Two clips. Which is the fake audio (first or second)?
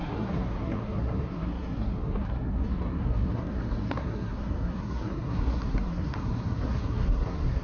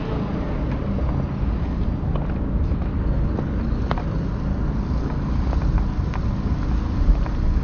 first